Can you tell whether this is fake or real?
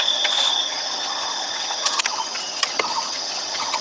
fake